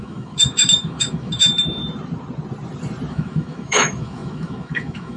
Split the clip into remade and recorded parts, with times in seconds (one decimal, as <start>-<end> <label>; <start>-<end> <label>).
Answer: 0.0-1.8 remade; 1.8-3.1 recorded; 3.1-5.2 remade